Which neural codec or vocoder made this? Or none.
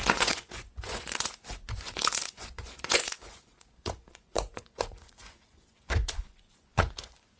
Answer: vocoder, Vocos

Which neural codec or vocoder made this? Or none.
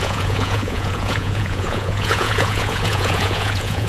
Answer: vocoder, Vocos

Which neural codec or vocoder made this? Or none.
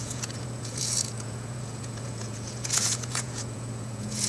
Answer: vocoder, Vocos